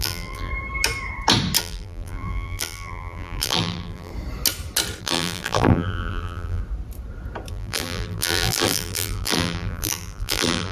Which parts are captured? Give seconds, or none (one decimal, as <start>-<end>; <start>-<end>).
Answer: 0.5-1.6; 4.1-5.0; 6.6-7.5